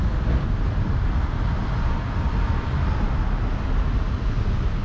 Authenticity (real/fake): real